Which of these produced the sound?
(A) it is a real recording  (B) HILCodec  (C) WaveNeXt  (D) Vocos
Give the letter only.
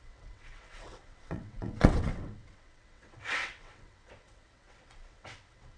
C